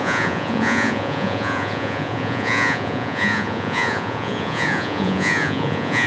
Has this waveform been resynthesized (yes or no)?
yes